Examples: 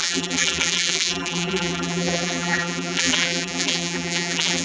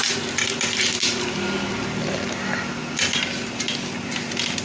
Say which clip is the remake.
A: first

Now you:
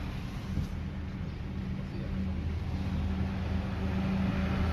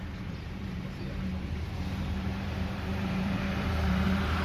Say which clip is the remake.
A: second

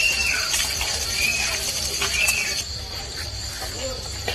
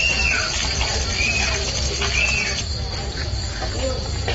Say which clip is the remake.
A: first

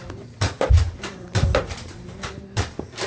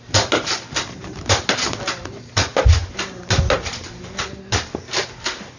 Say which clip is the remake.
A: first